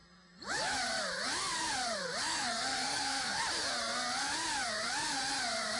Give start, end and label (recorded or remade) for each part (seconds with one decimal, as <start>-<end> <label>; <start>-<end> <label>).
0.0-2.2 recorded; 2.2-3.4 remade; 3.4-5.8 recorded